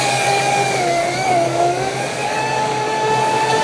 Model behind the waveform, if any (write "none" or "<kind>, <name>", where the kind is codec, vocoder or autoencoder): codec, DAC